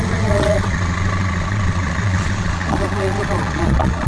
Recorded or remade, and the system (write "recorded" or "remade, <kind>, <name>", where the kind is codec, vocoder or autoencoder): remade, vocoder, Vocos